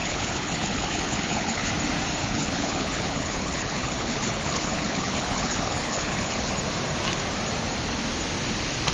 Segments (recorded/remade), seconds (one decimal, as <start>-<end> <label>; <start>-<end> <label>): 0.0-1.7 remade; 1.7-2.2 recorded; 2.2-6.5 remade; 6.5-8.9 recorded